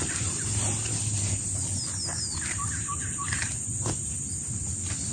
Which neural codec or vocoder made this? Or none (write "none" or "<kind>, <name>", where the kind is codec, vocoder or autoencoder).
none